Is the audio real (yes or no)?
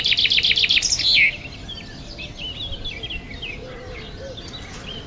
yes